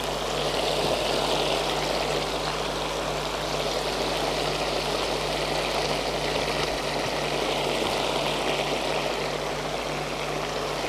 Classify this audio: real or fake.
real